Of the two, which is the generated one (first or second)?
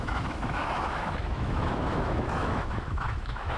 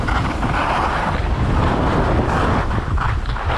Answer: first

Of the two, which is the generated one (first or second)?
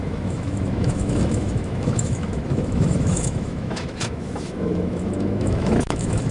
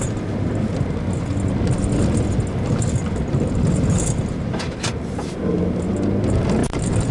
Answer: first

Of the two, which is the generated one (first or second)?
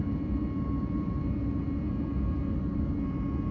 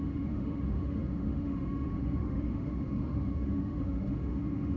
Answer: second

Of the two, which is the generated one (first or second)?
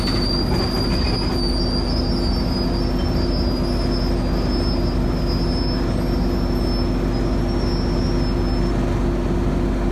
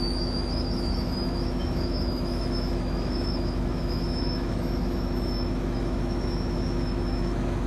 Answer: second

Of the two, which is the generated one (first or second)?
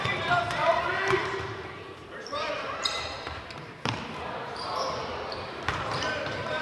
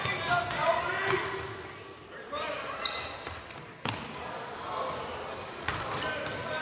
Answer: first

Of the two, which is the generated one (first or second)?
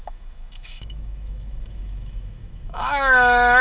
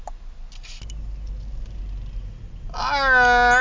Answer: first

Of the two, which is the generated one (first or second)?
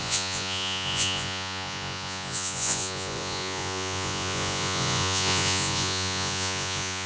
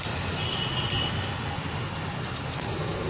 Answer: first